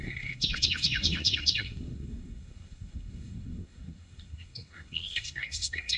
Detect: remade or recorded remade